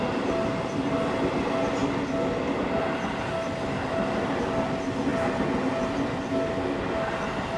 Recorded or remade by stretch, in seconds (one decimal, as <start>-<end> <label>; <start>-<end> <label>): 0.0-7.6 recorded